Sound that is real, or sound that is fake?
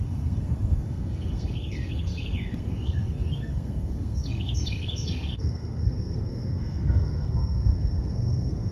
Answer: fake